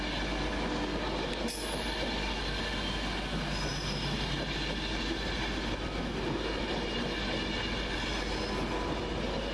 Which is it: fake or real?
real